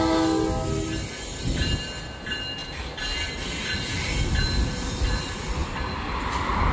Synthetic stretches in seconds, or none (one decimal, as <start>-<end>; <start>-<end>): none